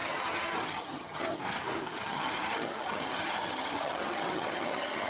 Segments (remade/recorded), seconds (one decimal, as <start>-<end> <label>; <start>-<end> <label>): 0.0-1.4 remade; 1.4-1.9 recorded; 1.9-5.1 remade